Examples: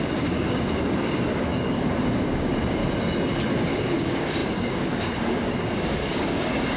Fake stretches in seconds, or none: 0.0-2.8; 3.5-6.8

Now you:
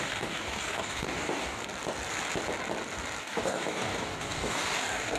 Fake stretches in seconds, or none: 0.0-1.6; 3.2-5.2

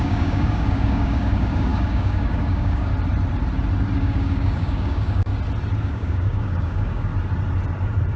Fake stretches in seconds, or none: 0.0-2.9; 4.0-5.3; 5.8-7.1